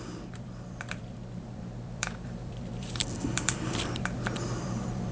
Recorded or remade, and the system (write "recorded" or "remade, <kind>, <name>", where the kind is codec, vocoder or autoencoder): remade, vocoder, BigVGAN v2